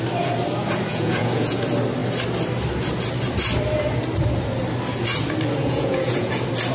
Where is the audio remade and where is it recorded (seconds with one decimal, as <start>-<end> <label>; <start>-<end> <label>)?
0.0-0.9 recorded; 0.9-1.6 remade; 1.6-5.6 recorded; 5.6-6.3 remade; 6.3-6.7 recorded